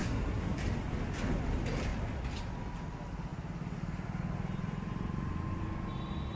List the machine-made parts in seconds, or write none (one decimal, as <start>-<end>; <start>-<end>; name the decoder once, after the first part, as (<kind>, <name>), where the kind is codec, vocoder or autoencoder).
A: 0.0-0.6 (codec, SNAC)

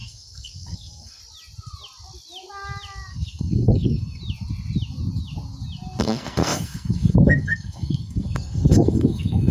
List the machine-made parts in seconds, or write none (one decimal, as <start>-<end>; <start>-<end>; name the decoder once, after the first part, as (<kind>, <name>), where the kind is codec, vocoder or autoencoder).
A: 0.0-1.2 (codec, SNAC); 3.1-4.2; 6.0-9.5

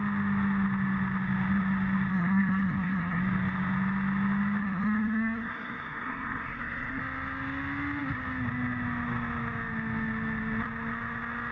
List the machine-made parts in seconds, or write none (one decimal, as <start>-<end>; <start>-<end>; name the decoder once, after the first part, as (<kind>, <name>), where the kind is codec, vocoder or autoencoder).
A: 2.1-3.2 (codec, SNAC); 4.6-7.0

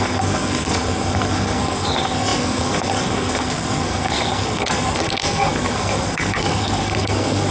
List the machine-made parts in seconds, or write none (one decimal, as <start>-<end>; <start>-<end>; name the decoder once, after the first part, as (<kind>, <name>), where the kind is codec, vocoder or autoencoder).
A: 0.0-7.5 (codec, SNAC)

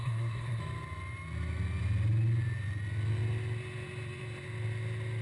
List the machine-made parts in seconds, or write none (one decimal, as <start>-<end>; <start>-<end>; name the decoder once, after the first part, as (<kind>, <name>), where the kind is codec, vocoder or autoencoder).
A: 0.0-0.6 (codec, SNAC)

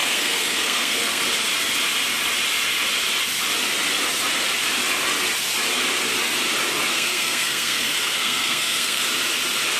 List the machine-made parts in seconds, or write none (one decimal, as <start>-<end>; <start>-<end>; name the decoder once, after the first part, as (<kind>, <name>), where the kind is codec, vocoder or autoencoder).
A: 0.0-1.2 (codec, SNAC); 6.9-9.0

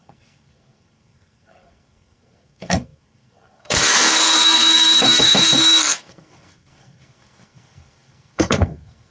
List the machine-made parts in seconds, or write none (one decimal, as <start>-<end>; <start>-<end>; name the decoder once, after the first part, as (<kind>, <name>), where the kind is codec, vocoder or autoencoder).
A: 0.0-9.1 (codec, SNAC)

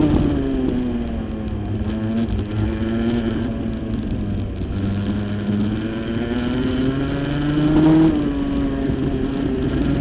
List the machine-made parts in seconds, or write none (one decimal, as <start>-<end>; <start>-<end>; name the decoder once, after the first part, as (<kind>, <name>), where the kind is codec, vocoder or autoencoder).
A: none